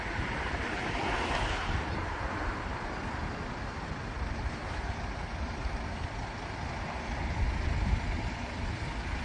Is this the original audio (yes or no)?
yes